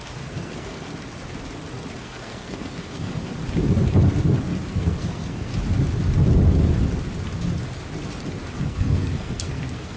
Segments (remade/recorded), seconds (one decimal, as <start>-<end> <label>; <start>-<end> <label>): 0.0-0.9 remade; 0.9-2.0 recorded; 2.0-3.3 remade; 3.3-4.7 recorded; 4.7-5.5 remade; 5.5-8.6 recorded; 8.6-10.0 remade